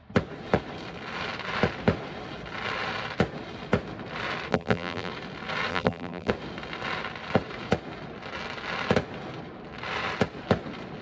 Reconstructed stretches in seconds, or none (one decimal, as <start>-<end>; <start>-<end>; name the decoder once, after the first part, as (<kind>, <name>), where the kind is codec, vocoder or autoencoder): 4.5-5.1 (vocoder, BigVGAN v2); 5.7-6.3